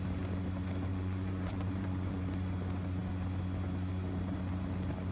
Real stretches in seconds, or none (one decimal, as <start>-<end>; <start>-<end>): 0.0-0.9; 2.2-5.1